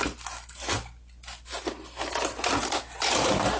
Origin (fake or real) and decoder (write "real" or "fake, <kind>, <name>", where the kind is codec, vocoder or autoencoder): real